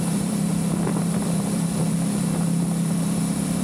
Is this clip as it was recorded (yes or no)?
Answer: no